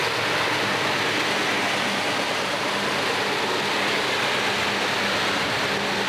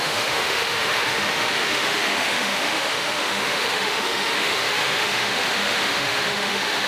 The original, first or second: first